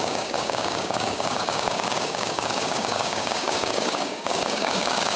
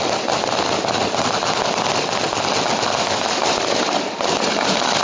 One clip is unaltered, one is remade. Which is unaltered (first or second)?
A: second